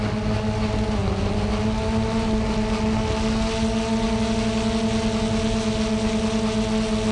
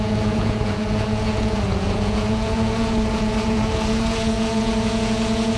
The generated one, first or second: second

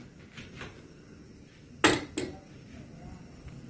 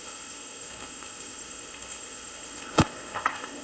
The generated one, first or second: second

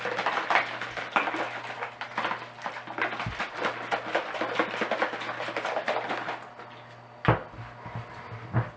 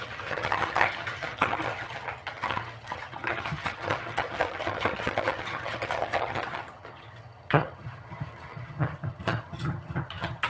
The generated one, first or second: second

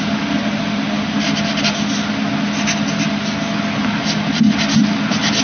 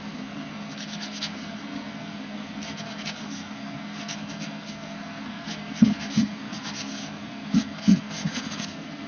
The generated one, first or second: second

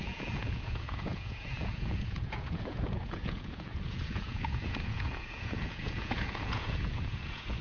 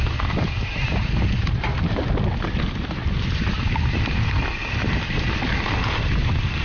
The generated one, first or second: first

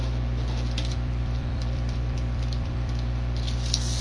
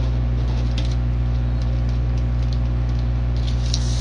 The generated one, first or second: first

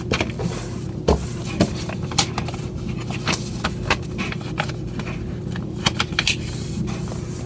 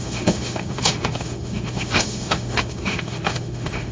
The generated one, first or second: second